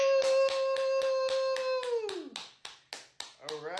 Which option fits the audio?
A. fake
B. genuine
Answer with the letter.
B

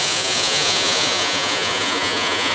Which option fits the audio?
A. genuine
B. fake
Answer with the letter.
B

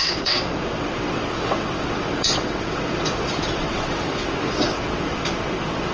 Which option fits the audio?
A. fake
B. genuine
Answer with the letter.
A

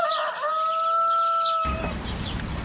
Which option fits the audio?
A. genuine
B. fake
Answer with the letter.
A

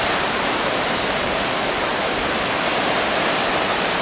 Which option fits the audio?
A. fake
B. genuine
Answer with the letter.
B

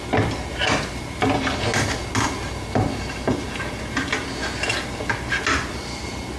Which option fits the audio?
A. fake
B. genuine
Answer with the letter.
B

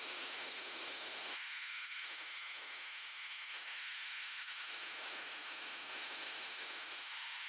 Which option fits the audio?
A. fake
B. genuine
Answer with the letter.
A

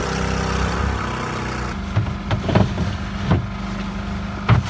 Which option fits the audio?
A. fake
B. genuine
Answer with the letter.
B